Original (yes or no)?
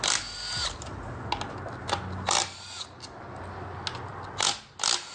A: yes